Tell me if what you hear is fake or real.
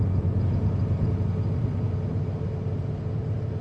real